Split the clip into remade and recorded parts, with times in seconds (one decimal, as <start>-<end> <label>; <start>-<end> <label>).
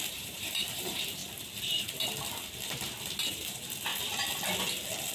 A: 0.0-1.2 remade; 1.2-3.3 recorded; 3.3-3.9 remade; 3.9-5.1 recorded